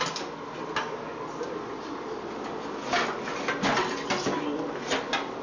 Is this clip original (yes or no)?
yes